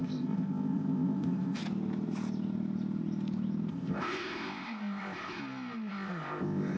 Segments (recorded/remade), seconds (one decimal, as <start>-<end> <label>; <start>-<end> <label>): 0.0-1.6 remade; 1.6-3.7 recorded; 3.7-5.4 remade; 5.4-5.9 recorded; 5.9-6.8 remade